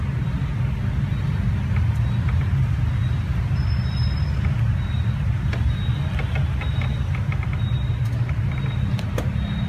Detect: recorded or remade recorded